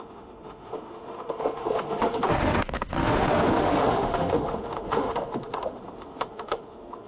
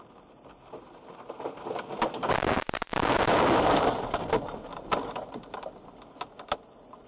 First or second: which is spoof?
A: first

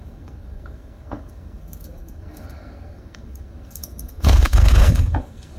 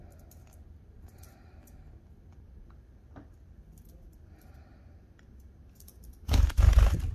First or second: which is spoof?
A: first